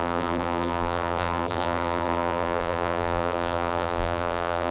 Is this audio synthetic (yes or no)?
yes